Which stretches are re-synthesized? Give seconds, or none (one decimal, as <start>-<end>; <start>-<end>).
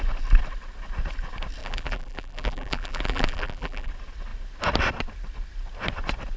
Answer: 1.6-3.9